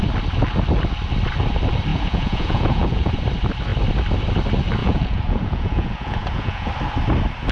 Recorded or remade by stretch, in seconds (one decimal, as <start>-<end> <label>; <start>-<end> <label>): 0.0-1.9 recorded; 1.9-3.2 remade; 3.2-4.8 recorded; 4.8-6.7 remade; 6.7-7.5 recorded